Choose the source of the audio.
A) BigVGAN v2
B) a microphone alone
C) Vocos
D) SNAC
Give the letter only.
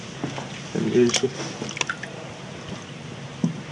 B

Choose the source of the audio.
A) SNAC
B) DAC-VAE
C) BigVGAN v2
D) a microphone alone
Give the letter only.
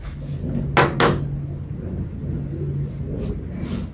D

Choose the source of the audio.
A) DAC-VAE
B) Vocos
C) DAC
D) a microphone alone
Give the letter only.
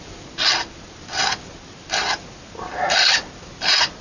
D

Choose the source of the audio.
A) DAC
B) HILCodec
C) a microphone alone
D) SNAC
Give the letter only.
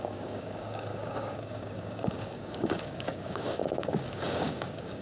A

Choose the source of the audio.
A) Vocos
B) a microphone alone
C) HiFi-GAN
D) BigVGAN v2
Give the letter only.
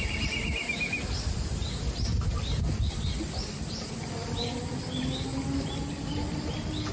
B